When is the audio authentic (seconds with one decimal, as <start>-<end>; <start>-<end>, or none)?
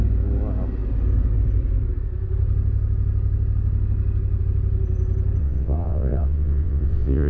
0.0-5.4